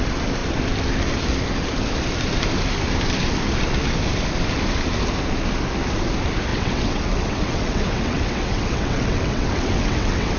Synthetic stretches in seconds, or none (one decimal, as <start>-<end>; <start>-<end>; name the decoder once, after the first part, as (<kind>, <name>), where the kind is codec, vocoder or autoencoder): 6.5-10.4 (vocoder, WaveNeXt)